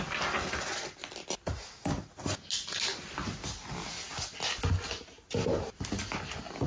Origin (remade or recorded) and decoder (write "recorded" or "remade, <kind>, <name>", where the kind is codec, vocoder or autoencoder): recorded